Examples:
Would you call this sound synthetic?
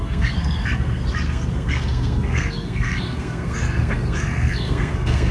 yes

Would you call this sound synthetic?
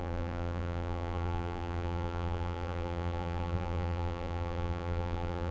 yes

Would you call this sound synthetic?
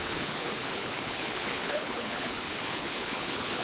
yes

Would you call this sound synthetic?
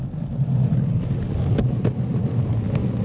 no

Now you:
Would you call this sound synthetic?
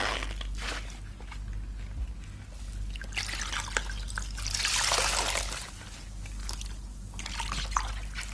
no